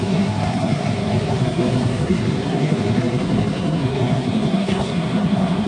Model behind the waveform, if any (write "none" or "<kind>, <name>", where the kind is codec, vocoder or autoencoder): codec, SNAC